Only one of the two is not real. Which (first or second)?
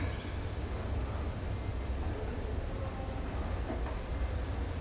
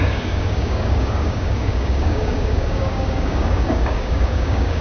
second